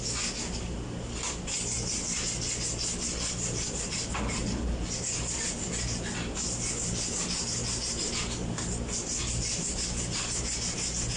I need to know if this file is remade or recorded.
recorded